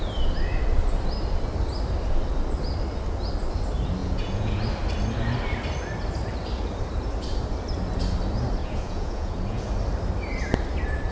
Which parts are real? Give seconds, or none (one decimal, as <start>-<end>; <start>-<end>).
0.0-4.0; 4.6-8.6; 9.6-11.1